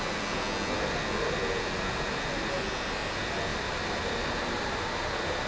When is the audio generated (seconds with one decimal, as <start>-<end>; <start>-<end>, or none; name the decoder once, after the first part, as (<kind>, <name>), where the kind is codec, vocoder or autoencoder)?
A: 3.5-4.7 (vocoder, BigVGAN v2)